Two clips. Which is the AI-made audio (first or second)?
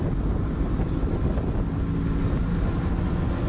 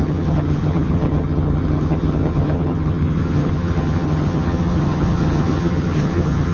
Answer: second